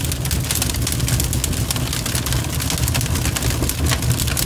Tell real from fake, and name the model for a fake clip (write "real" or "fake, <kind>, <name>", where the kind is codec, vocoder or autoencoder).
real